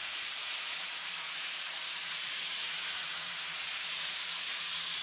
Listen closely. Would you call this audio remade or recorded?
remade